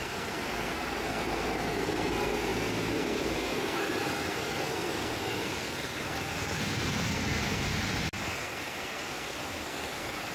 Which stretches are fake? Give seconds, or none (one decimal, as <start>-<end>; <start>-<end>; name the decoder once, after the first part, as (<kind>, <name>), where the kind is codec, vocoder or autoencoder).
0.0-7.7 (codec, SNAC); 8.2-10.3